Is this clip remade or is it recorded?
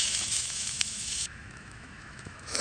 remade